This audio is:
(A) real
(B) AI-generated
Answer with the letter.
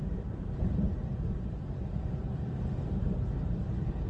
B